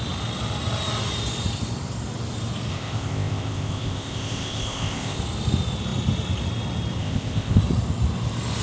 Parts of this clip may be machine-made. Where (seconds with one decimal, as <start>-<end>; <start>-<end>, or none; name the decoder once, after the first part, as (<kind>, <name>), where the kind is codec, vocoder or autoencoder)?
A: 2.7-5.2 (codec, ZipCodec); 7.0-7.6